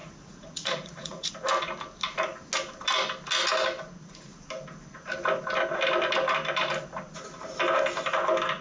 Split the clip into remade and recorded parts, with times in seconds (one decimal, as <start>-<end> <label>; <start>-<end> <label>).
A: 0.0-1.3 remade; 1.3-8.6 recorded